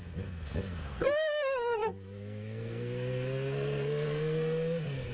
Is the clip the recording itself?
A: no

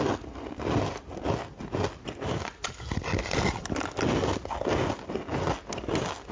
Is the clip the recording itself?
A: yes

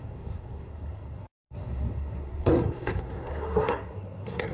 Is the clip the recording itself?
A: no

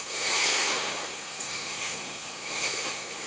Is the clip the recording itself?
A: no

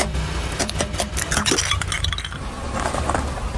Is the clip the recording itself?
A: yes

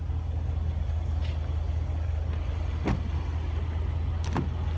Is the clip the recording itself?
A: yes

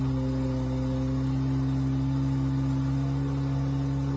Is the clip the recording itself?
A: yes